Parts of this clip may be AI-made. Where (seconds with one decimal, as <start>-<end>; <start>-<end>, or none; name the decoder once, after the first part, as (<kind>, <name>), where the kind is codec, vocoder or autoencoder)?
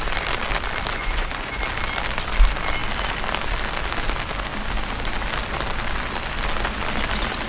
0.9-1.6 (vocoder, Vocos)